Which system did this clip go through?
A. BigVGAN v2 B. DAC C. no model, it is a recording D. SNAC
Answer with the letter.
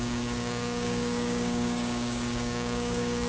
B